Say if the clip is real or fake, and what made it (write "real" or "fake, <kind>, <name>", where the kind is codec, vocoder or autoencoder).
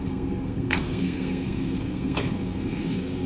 fake, codec, SNAC